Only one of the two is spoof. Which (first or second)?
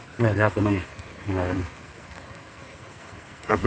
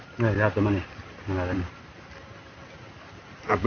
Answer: first